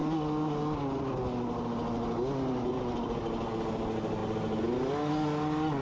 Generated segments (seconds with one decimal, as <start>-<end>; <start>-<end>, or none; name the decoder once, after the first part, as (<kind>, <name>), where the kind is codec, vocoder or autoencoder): none